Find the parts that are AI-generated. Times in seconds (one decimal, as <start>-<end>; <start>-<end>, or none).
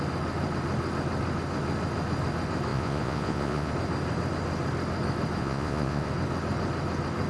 2.7-3.7; 5.4-6.1